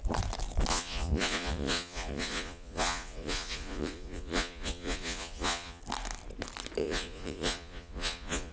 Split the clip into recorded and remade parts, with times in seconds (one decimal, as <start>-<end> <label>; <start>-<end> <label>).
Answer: 0.0-0.7 recorded; 0.7-5.8 remade; 5.8-6.8 recorded; 6.8-8.5 remade